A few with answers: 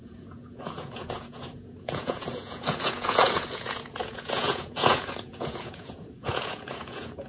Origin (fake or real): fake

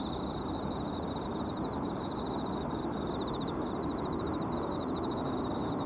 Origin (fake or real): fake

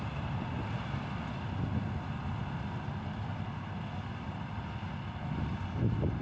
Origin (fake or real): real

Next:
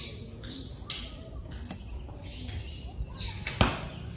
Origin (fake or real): real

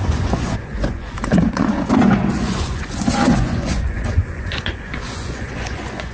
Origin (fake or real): fake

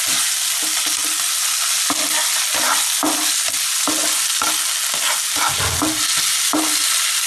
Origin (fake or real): real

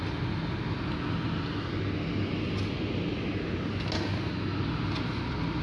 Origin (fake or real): real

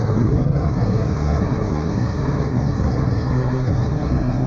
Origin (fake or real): fake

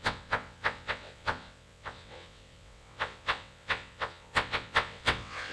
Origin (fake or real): fake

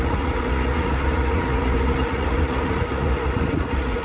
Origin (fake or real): fake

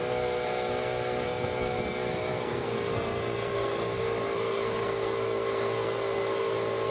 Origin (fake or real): fake